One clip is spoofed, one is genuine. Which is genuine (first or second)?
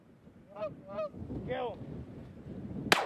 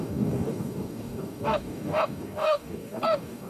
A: first